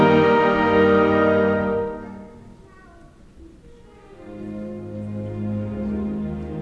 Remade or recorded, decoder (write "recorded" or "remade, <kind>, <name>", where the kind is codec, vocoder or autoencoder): recorded